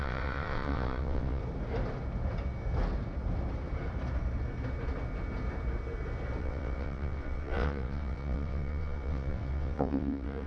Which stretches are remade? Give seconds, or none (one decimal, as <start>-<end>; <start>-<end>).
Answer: 0.0-1.4; 6.4-10.5

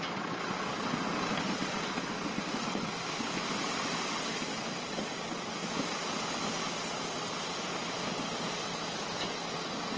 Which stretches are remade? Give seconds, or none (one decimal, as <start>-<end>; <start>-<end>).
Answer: none